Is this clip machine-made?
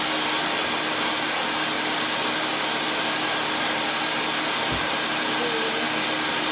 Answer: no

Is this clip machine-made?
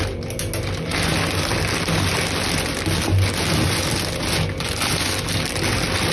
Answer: no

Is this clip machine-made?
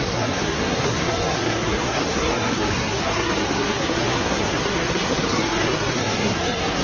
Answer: yes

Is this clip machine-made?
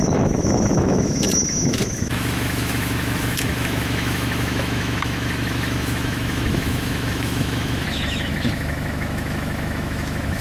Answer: yes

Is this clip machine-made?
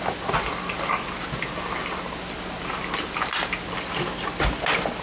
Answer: no